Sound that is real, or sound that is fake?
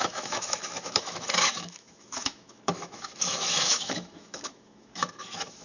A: fake